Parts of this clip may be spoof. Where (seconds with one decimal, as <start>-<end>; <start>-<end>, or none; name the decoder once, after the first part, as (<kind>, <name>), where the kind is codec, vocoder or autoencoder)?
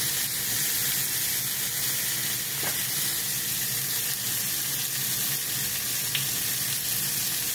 none